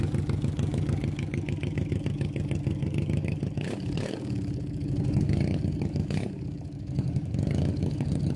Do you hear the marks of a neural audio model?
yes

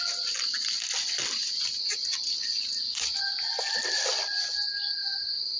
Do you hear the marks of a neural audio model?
no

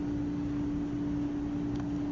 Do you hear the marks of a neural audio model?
no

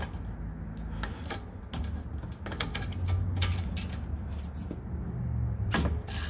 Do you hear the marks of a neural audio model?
no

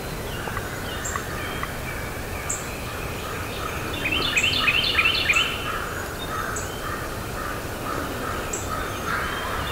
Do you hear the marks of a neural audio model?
no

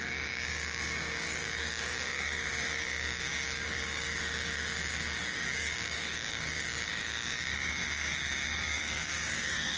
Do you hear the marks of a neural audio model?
yes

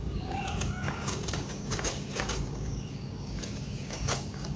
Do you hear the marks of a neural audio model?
yes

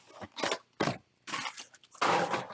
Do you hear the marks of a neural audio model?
no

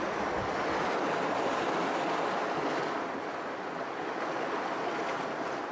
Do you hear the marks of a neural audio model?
no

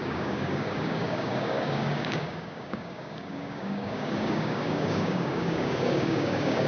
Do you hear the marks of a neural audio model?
yes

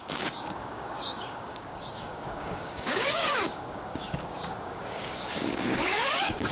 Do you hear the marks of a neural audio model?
yes